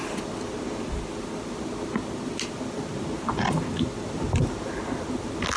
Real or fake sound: real